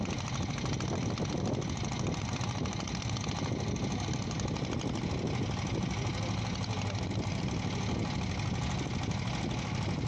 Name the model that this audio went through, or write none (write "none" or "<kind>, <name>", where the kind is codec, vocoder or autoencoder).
none